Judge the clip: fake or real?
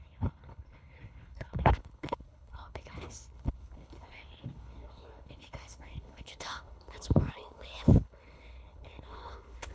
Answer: fake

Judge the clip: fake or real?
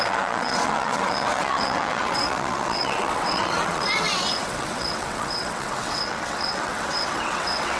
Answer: fake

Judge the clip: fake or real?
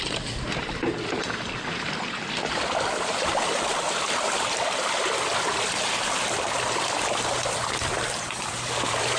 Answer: fake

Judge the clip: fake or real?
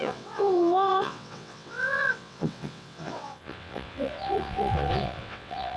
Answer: fake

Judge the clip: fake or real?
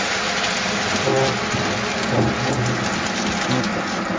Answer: real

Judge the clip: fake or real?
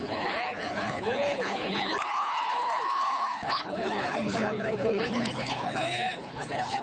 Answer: fake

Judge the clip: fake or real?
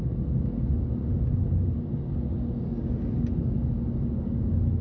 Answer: real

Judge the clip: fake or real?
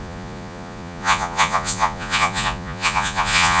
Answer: fake